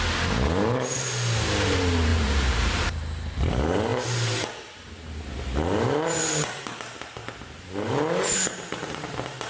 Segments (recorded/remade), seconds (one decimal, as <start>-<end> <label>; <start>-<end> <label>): 0.0-2.1 recorded; 2.1-3.5 remade; 3.5-7.2 recorded; 7.2-7.9 remade; 7.9-9.5 recorded